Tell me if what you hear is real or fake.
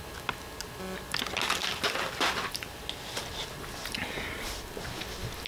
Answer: real